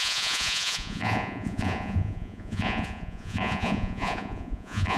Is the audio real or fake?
fake